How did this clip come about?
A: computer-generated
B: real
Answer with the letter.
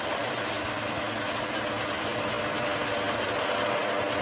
B